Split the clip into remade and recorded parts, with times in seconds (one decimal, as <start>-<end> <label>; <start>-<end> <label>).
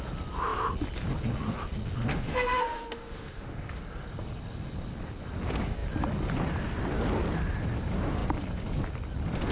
0.0-2.1 recorded; 2.1-3.8 remade; 3.8-9.5 recorded